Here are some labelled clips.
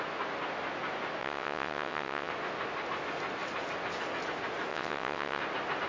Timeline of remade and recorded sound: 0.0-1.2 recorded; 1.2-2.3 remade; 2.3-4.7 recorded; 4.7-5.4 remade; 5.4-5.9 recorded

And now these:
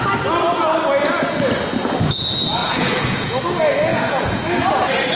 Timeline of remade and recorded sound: 0.0-2.6 recorded; 2.6-3.4 remade; 3.4-3.9 recorded; 3.9-4.4 remade; 4.4-5.2 recorded